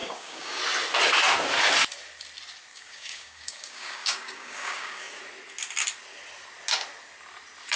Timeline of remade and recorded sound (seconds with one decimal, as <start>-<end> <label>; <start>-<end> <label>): 0.0-0.6 remade; 0.6-2.7 recorded; 2.7-5.2 remade; 5.2-7.8 recorded